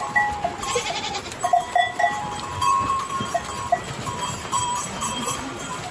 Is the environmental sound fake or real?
fake